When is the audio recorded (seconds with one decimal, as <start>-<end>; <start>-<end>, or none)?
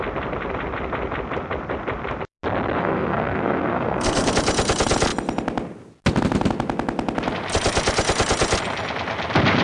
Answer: 0.0-2.8; 4.3-9.6